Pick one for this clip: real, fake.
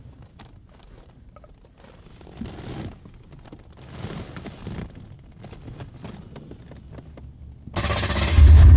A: real